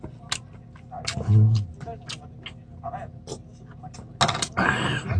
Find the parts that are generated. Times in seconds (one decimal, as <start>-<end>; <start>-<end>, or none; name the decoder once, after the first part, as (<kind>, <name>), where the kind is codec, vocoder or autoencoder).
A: none